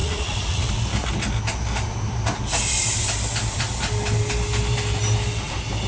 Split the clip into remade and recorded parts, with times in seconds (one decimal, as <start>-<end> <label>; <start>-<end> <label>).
0.0-0.7 remade; 0.7-5.9 recorded

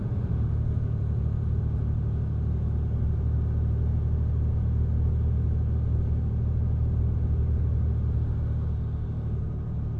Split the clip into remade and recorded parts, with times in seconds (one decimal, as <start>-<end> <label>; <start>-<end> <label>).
0.0-1.6 remade; 1.6-10.0 recorded

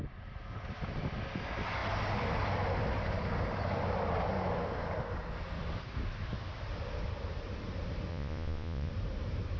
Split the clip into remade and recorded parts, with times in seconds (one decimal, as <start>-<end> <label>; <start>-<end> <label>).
0.0-8.1 recorded; 8.1-8.9 remade; 8.9-9.6 recorded

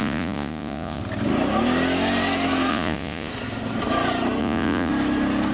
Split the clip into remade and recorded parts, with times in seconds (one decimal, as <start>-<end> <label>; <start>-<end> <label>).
0.0-1.0 remade; 1.0-2.7 recorded; 2.7-3.3 remade; 3.3-4.4 recorded; 4.4-4.9 remade; 4.9-5.5 recorded